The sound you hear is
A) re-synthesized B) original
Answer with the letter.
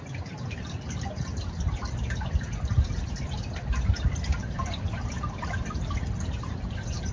A